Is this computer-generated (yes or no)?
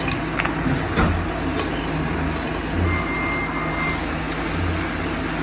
no